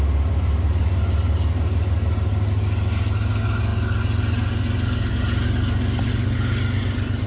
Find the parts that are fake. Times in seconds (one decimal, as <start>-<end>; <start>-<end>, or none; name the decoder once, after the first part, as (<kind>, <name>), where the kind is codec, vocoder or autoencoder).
none